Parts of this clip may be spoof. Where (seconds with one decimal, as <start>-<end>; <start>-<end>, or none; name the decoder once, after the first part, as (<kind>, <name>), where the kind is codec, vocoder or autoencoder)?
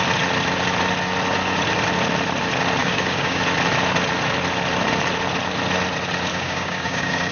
2.8-3.4 (codec, DAC); 6.3-7.3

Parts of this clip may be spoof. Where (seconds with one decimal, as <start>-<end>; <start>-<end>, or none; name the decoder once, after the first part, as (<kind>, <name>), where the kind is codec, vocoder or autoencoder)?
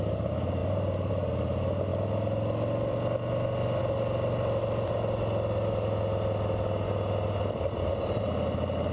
none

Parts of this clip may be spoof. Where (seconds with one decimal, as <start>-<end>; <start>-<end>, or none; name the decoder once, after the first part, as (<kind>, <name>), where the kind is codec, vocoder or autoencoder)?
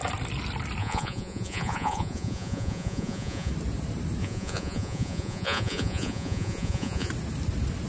0.8-3.5 (vocoder, Vocos); 4.2-7.1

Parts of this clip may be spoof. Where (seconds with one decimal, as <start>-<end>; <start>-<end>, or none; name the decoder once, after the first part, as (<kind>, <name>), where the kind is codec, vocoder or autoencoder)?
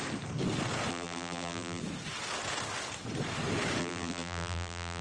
0.9-1.8 (vocoder, BigVGAN v2); 3.8-5.0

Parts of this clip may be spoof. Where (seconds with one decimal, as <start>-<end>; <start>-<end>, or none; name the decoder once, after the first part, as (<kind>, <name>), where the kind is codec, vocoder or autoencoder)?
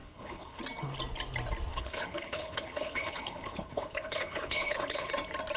0.0-0.6 (codec, HILCodec); 1.7-5.1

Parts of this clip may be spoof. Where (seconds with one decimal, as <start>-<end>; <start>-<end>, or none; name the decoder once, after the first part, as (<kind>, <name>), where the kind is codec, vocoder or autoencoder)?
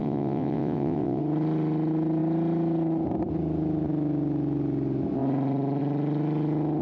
0.0-1.2 (vocoder, WaveNeXt)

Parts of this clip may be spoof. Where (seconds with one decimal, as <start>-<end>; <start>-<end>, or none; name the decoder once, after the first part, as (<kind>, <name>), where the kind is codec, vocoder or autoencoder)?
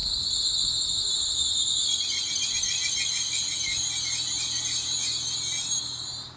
none